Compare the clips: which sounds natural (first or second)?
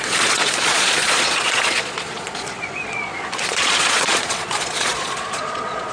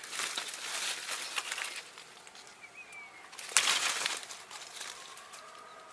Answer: second